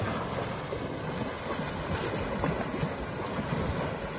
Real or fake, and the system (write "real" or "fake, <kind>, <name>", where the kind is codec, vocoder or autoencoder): real